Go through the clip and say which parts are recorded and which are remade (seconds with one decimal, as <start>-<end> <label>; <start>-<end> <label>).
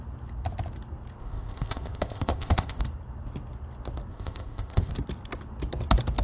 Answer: 0.0-1.2 recorded; 1.2-2.8 remade; 2.8-4.1 recorded; 4.1-4.9 remade; 4.9-6.2 recorded